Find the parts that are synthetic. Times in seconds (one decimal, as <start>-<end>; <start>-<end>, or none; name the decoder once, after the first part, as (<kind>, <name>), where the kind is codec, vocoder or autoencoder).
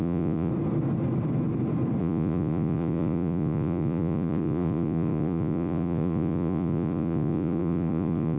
0.0-0.5 (vocoder, Vocos); 2.0-8.4